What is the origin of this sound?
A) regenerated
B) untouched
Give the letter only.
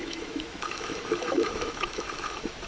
A